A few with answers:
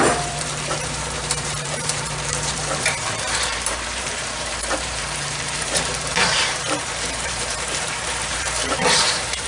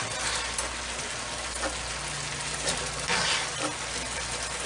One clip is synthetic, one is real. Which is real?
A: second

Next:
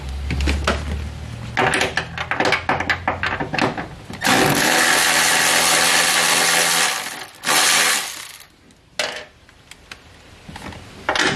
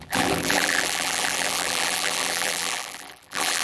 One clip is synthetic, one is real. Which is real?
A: first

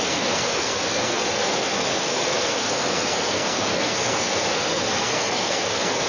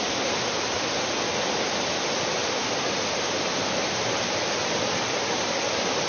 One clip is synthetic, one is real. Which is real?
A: second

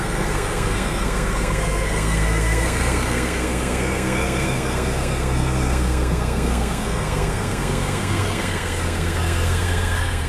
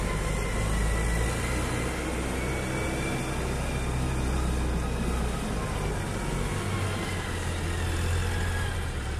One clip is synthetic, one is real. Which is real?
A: second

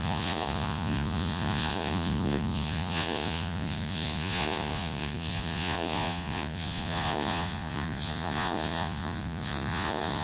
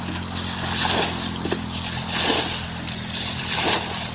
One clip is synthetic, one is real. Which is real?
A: second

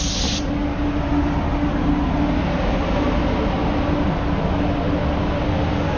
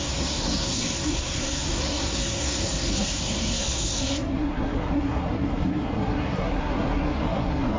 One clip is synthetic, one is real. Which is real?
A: first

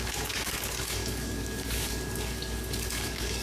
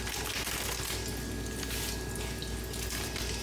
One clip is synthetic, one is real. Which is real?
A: second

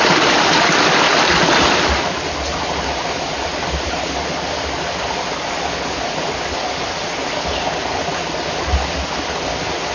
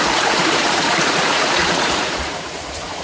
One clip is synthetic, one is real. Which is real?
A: first